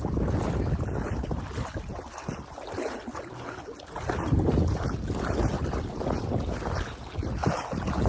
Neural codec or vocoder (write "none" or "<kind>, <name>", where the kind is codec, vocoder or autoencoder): none